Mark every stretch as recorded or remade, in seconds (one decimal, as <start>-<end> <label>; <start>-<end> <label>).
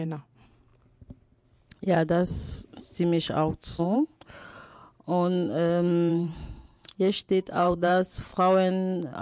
0.0-0.7 remade; 0.7-3.8 recorded; 3.8-4.8 remade; 4.8-6.1 recorded; 6.1-8.3 remade; 8.3-9.2 recorded